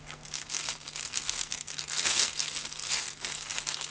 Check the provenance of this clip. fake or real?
fake